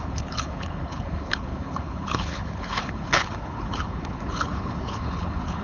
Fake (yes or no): yes